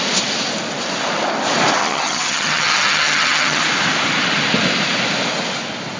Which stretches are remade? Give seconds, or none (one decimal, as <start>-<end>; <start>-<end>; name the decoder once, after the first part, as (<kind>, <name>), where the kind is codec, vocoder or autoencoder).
1.8-3.6 (vocoder, HiFi-GAN)